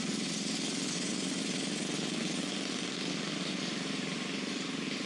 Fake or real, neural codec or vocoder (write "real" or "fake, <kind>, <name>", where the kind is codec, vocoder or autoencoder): real